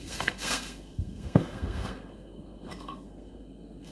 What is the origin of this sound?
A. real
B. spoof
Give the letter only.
B